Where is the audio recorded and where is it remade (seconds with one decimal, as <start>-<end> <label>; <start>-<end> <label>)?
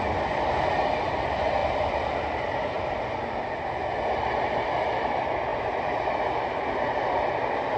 0.0-1.6 recorded; 1.6-2.4 remade; 2.4-5.5 recorded; 5.5-6.1 remade; 6.1-7.8 recorded